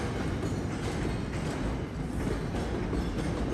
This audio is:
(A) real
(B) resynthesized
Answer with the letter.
A